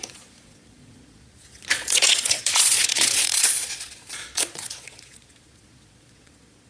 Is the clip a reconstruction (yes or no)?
yes